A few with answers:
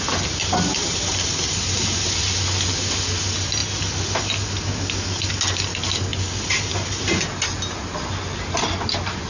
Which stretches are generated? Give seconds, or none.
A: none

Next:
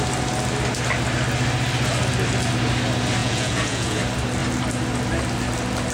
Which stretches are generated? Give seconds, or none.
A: 3.2-4.0 (vocoder, Vocos)

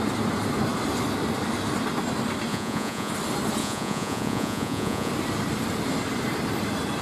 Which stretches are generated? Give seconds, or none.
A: 2.5-3.1 (vocoder, Vocos); 3.6-5.1

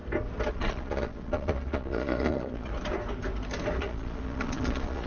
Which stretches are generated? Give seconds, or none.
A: 0.5-2.7 (vocoder, Vocos); 3.8-5.1

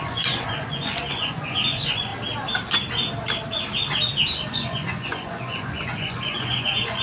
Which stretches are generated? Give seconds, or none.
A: 0.0-2.1 (vocoder, Vocos); 4.5-7.0

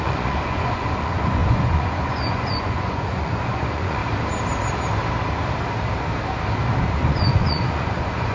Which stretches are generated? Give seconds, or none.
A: 0.0-4.0 (vocoder, Vocos); 7.1-8.3